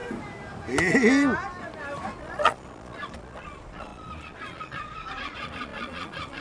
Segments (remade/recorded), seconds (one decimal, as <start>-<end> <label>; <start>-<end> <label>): 0.0-2.2 recorded; 2.2-6.4 remade